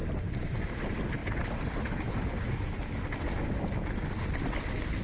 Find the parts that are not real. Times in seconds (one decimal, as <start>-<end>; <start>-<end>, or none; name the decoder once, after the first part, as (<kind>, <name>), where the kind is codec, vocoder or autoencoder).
none